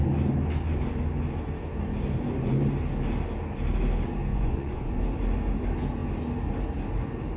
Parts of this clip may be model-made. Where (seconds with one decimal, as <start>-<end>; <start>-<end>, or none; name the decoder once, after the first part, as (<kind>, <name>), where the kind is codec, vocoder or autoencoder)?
4.3-5.0 (vocoder, Vocos)